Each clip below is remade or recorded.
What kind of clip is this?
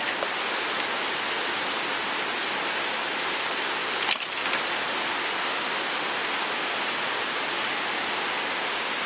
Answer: recorded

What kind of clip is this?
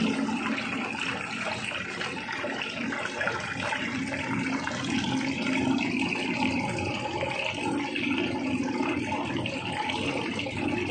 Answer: recorded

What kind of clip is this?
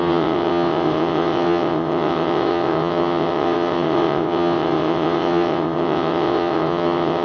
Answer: remade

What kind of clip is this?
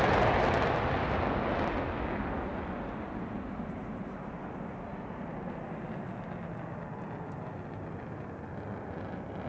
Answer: recorded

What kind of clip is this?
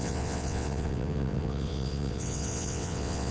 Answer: remade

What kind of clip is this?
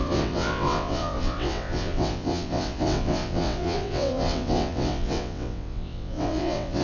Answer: remade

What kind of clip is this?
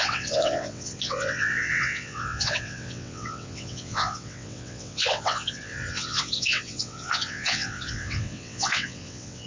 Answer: remade